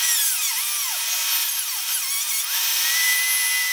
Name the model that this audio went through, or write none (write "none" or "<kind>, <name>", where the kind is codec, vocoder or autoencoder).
none